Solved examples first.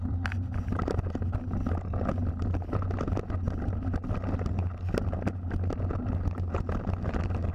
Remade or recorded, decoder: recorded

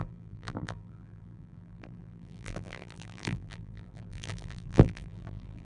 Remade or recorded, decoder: remade, vocoder, BigVGAN v2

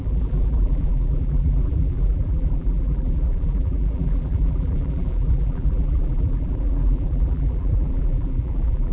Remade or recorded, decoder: remade, vocoder, BigVGAN v2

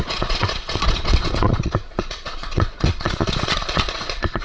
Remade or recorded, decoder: remade, vocoder, Vocos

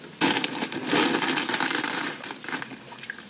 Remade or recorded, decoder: recorded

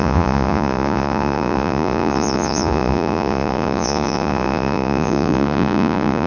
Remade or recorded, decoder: remade, vocoder, Vocos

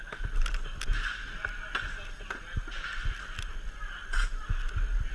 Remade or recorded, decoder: recorded